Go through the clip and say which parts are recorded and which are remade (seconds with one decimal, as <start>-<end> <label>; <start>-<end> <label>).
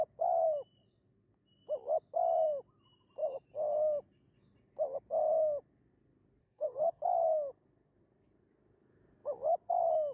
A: 0.0-6.4 recorded; 6.4-7.0 remade; 7.0-10.1 recorded